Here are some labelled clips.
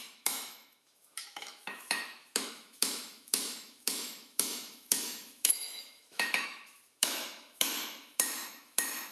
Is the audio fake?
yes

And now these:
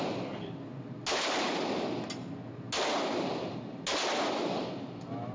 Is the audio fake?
no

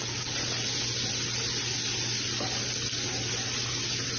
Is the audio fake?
no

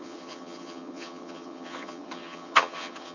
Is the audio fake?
yes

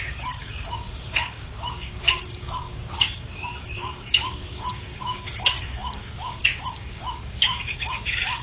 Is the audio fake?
yes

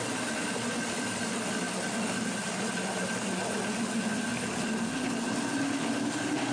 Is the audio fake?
no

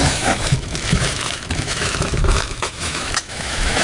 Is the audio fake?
yes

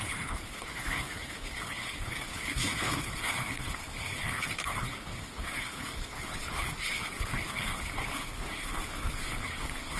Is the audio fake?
yes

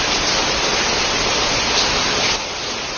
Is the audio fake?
no